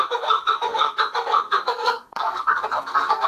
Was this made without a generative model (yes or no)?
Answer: no